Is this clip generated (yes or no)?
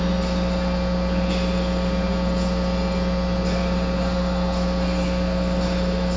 no